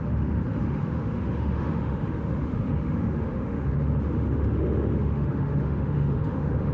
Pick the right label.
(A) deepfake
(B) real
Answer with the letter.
A